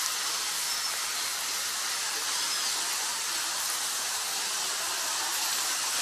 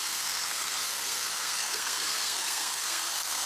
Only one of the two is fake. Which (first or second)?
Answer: second